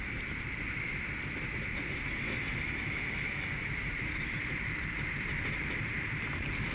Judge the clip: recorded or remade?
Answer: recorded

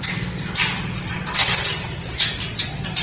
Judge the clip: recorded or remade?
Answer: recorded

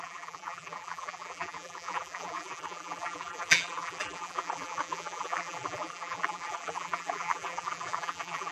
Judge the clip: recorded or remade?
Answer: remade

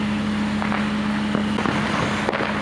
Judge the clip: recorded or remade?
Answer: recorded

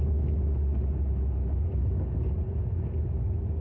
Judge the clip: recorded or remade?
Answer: recorded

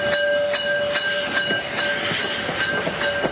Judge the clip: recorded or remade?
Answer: recorded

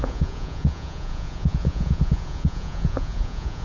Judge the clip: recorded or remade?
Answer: remade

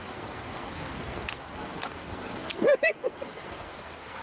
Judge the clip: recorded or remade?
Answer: remade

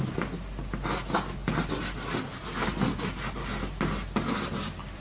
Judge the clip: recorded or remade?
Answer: recorded